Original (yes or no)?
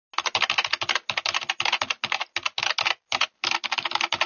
yes